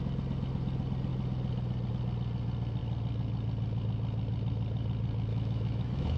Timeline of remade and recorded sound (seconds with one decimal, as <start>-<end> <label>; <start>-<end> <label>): 0.0-5.3 recorded; 5.3-6.2 remade